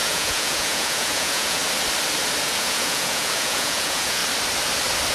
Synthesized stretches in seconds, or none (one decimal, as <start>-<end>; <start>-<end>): 0.0-1.6; 2.4-4.2